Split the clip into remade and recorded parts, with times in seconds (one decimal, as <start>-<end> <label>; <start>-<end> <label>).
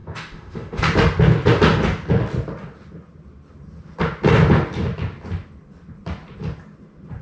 0.0-0.8 remade; 0.8-7.2 recorded